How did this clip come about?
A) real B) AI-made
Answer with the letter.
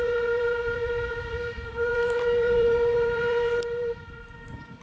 B